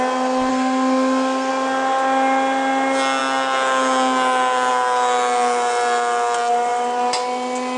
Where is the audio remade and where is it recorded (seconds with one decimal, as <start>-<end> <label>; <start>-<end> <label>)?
0.0-0.5 recorded; 0.5-1.5 remade; 1.5-7.8 recorded